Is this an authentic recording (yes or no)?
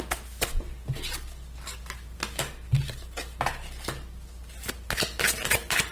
yes